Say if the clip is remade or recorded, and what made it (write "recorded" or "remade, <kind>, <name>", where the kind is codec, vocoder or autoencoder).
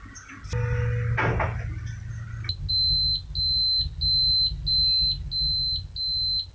recorded